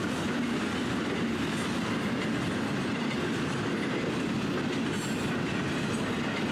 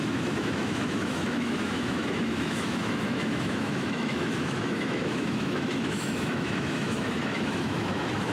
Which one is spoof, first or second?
second